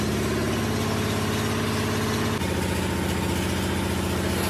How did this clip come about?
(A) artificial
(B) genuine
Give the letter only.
B